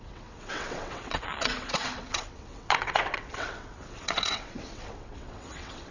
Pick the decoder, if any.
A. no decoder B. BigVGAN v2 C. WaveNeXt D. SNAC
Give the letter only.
C